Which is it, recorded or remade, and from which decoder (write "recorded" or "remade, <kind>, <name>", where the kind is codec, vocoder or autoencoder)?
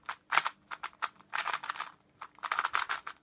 recorded